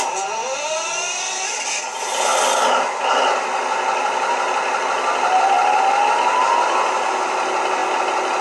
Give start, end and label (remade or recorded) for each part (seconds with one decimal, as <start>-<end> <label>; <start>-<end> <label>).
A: 0.0-8.4 recorded